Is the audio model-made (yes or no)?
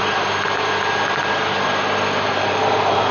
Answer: no